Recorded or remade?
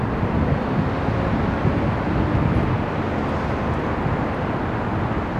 recorded